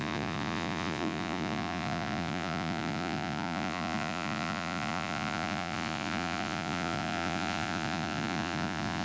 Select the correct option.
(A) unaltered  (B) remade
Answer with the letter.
B